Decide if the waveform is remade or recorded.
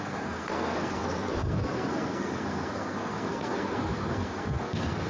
remade